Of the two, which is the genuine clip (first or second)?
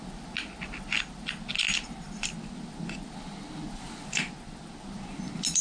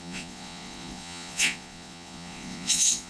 first